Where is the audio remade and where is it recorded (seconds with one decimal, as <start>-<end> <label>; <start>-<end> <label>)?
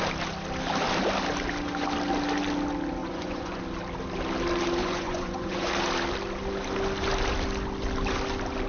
0.0-3.0 recorded; 3.0-3.6 remade; 3.6-4.8 recorded; 4.8-5.7 remade; 5.7-8.7 recorded